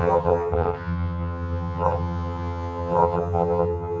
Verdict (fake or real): fake